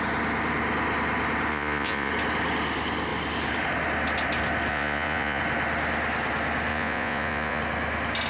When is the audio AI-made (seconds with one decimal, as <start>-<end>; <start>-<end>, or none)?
1.5-2.1; 4.7-5.4; 6.7-7.6